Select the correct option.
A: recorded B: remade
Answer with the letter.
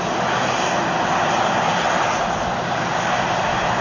A